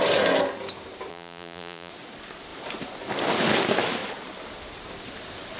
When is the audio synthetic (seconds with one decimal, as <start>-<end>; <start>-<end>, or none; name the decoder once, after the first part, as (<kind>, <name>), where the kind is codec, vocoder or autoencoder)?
1.1-1.9 (vocoder, BigVGAN v2)